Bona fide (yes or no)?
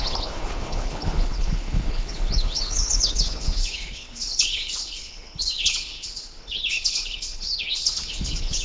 no